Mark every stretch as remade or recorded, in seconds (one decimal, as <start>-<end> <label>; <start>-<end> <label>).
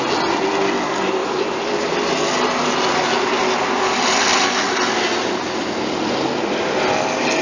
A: 0.0-1.2 recorded; 1.2-1.7 remade; 1.7-7.4 recorded